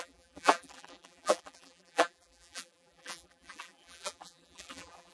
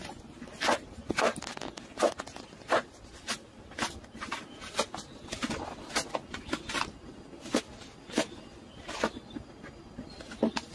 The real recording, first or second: second